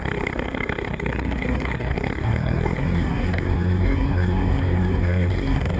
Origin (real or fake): fake